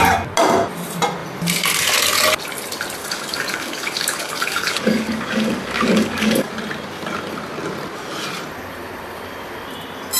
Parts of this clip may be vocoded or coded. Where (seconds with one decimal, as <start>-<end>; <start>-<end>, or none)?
3.0-6.5